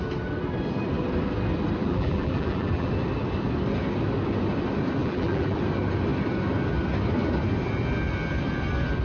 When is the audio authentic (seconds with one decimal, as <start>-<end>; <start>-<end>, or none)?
0.0-1.8; 2.9-5.0; 5.6-9.0